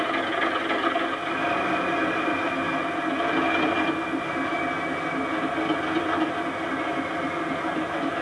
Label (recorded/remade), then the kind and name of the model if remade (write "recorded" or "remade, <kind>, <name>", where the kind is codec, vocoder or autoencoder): recorded